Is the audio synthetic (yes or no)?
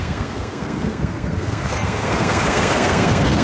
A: yes